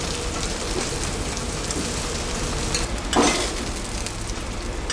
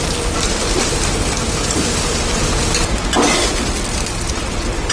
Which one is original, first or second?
first